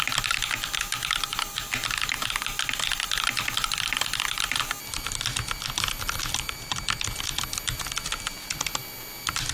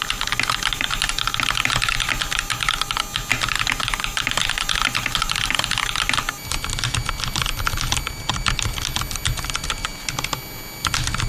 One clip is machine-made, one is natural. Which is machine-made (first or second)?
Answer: first